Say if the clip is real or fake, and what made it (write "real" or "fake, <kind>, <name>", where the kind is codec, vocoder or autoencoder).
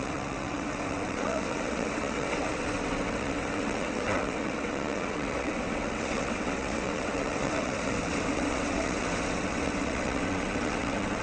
fake, vocoder, WaveNeXt